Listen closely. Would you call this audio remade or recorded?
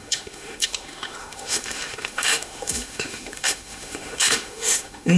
remade